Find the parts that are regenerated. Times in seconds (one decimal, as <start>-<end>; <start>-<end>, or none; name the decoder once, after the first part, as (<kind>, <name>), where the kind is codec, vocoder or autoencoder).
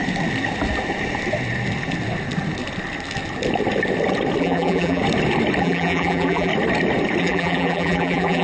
4.4-5.0 (vocoder, BigVGAN v2); 5.6-6.5; 7.2-8.4